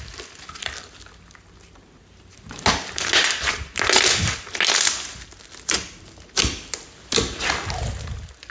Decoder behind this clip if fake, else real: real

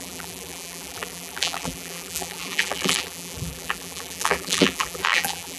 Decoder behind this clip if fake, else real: fake, vocoder, BigVGAN v2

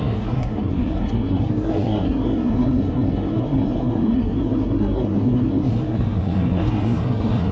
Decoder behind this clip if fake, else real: fake, codec, SNAC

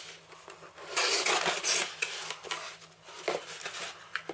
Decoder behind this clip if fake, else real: real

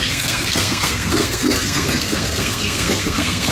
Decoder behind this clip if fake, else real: fake, codec, SNAC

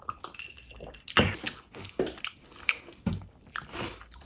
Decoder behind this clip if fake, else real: real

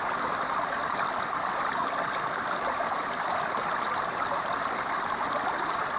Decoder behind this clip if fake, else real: fake, vocoder, BigVGAN v2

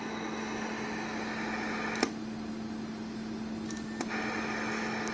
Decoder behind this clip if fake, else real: real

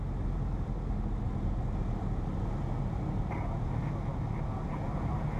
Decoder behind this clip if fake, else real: real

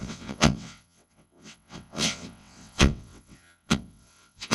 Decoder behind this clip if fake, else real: fake, vocoder, WaveNeXt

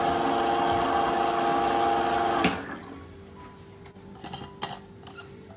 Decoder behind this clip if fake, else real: real